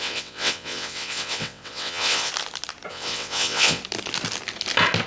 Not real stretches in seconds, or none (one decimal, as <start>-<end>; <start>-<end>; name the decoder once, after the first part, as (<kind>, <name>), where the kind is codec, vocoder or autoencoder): 0.0-2.3 (vocoder, WaveNeXt); 2.9-3.8